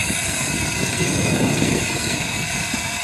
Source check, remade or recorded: remade